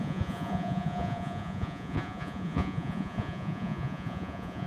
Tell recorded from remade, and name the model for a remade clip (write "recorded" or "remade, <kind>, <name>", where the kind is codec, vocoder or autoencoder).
remade, vocoder, Vocos